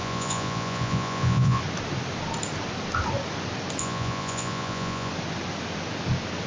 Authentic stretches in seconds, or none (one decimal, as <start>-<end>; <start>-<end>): 1.6-3.8; 5.1-6.5